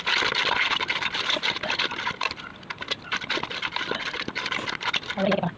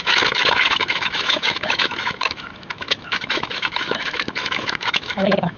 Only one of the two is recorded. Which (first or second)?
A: first